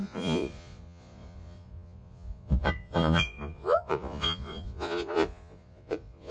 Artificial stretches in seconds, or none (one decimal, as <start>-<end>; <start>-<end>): 0.0-6.3